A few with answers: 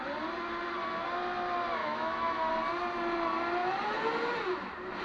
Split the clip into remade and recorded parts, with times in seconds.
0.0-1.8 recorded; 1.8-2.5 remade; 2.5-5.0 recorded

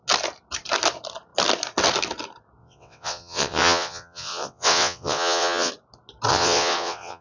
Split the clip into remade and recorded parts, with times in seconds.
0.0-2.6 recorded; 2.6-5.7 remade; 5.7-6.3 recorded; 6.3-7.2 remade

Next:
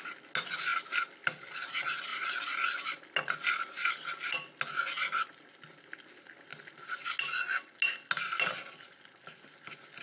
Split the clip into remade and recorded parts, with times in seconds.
0.0-10.0 recorded

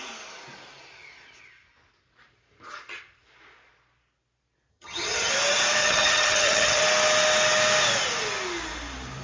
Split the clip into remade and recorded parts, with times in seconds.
0.0-4.7 recorded; 4.7-5.3 remade; 5.3-5.8 recorded; 5.8-6.8 remade; 6.8-9.2 recorded

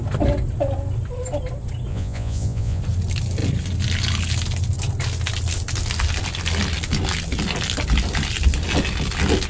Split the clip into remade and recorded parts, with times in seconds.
0.0-1.9 recorded; 1.9-2.8 remade; 2.8-9.5 recorded

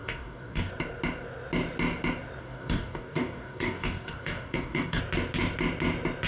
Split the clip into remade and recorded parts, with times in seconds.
0.0-0.7 remade; 0.7-2.4 recorded; 2.4-5.0 remade; 5.0-6.3 recorded

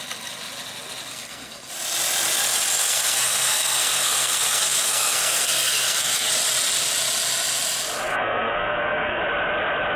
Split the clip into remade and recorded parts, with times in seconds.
0.0-1.1 recorded; 1.1-1.7 remade; 1.7-2.8 recorded; 2.8-6.3 remade; 6.3-8.1 recorded; 8.1-9.2 remade; 9.2-10.0 recorded